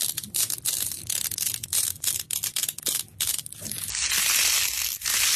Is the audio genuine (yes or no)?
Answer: yes